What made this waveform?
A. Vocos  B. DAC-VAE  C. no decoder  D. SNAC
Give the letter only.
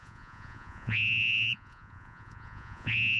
A